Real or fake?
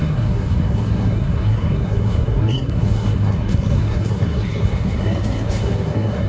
fake